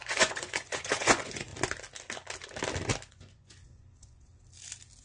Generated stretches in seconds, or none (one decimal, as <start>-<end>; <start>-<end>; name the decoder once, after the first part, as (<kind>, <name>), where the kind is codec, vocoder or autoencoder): 0.0-1.5 (vocoder, Vocos); 3.1-4.3